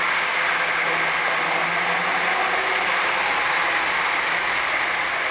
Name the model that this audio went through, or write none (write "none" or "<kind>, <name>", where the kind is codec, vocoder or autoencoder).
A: none